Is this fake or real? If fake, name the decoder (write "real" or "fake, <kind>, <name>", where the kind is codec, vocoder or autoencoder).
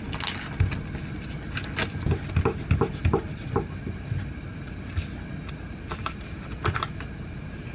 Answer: real